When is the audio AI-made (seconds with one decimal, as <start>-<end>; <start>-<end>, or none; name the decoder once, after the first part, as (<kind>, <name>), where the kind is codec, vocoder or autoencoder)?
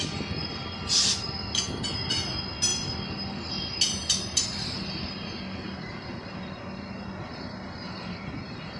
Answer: none